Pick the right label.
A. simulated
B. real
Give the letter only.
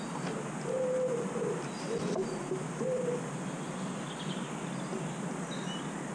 B